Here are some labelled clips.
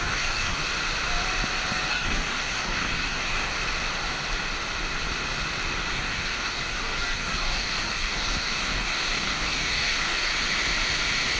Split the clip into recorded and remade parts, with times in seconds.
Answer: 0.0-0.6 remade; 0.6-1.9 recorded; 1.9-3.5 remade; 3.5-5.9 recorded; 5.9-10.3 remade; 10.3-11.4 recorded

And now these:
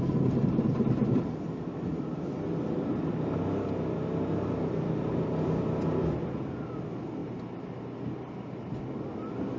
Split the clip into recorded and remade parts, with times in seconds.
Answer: 0.0-9.6 recorded